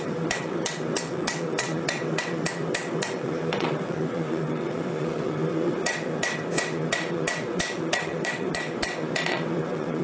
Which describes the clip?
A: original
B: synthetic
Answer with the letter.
B